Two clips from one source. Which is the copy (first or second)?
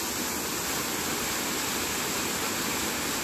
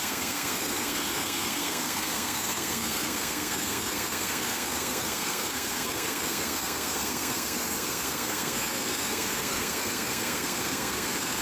second